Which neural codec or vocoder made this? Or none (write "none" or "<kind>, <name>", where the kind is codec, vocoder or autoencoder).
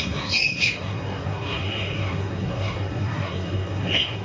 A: codec, SNAC